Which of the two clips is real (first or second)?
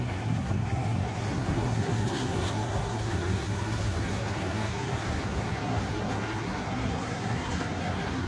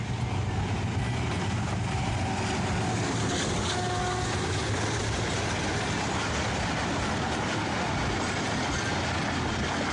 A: second